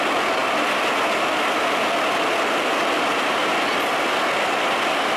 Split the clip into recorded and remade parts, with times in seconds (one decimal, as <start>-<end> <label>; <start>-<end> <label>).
0.0-5.2 recorded